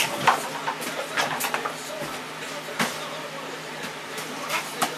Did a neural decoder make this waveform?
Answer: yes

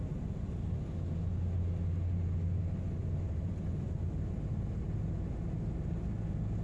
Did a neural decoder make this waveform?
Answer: no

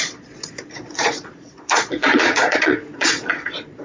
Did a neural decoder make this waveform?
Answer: yes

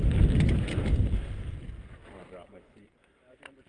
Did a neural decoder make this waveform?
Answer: no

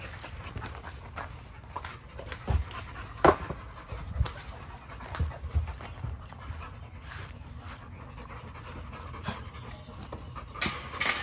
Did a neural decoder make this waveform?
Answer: no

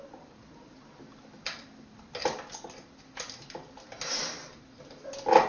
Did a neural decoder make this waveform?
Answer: no